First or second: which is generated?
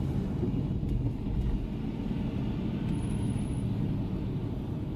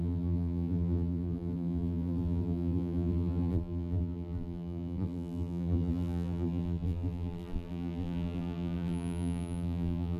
second